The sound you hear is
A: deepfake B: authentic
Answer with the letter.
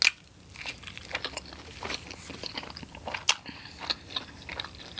B